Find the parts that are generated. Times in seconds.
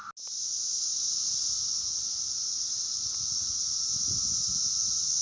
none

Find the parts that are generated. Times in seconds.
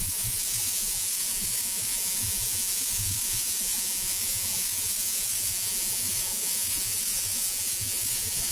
0.0-8.5 (vocoder, Vocos)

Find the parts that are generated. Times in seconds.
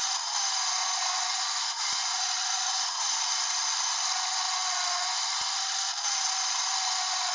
0.8-3.2 (vocoder, Vocos)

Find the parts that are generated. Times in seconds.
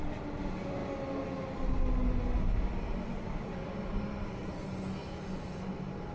none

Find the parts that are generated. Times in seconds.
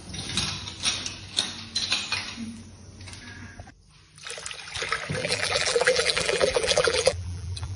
5.2-7.8 (vocoder, BigVGAN v2)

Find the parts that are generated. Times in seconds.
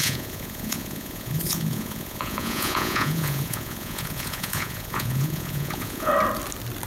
0.0-6.1 (vocoder, Vocos)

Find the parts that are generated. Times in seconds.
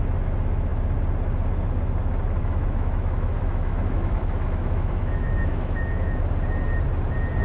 2.4-6.3 (autoencoder, DAC-VAE)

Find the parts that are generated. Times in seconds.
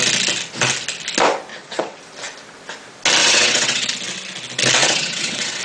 1.5-2.0 (vocoder, WaveNeXt); 3.2-3.9; 4.8-5.6